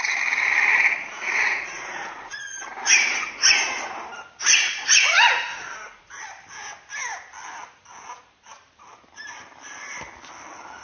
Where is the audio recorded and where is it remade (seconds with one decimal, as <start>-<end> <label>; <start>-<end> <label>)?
0.0-0.7 recorded; 0.7-3.5 remade; 3.5-4.4 recorded; 4.4-6.2 remade; 6.2-10.8 recorded